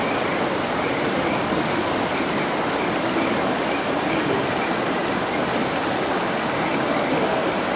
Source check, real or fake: real